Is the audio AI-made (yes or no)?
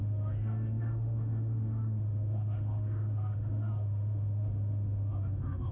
yes